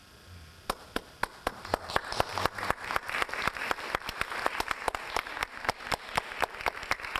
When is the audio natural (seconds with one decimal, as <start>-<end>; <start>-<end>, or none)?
0.0-7.2